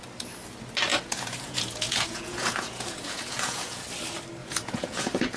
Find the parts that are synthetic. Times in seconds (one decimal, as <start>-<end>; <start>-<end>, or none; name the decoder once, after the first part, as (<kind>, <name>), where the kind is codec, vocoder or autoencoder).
0.9-3.8 (vocoder, Vocos); 4.4-5.4

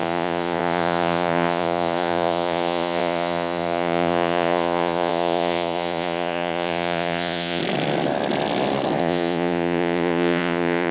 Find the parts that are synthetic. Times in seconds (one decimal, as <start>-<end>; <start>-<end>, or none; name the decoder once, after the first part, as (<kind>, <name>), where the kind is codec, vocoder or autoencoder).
0.0-7.6 (vocoder, Vocos); 9.0-10.9

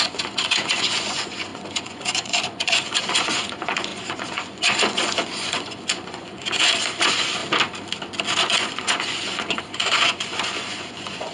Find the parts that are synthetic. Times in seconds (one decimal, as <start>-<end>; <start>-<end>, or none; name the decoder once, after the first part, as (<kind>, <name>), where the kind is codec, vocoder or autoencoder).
0.0-7.4 (vocoder, Vocos); 8.4-11.3

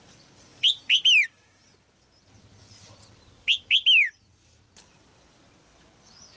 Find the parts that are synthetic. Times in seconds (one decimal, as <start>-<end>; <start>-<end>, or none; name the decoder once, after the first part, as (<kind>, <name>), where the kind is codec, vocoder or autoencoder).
none